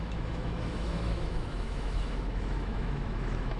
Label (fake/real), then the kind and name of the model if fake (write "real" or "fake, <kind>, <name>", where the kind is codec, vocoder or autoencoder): fake, autoencoder, DAC-VAE